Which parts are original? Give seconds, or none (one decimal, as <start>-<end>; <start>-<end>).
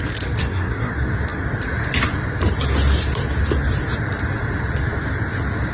0.0-0.4; 0.9-5.7